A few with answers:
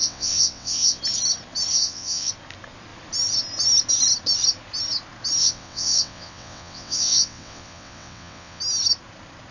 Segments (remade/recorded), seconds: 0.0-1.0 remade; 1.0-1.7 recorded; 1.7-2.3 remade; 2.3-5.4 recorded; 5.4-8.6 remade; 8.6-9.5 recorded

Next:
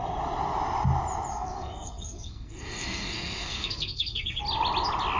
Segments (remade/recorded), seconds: 0.0-1.3 recorded; 1.3-4.4 remade; 4.4-5.2 recorded

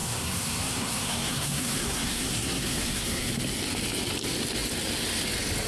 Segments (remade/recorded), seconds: 0.0-3.3 remade; 3.3-5.7 recorded

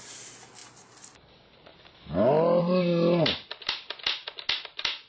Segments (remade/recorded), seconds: 0.0-5.1 recorded

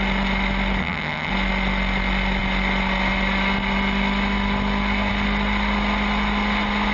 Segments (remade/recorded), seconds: 0.0-0.8 recorded; 0.8-1.3 remade; 1.3-6.9 recorded

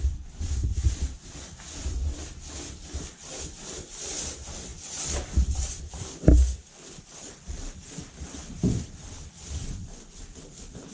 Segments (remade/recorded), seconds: 0.0-10.9 recorded

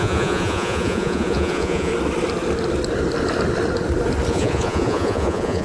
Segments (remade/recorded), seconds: 0.0-1.9 remade; 1.9-4.3 recorded; 4.3-5.6 remade